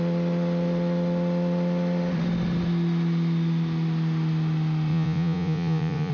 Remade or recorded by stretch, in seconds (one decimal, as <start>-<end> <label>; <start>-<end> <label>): 0.0-4.9 recorded; 4.9-6.1 remade